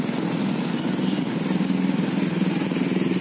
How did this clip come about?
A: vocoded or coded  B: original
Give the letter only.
B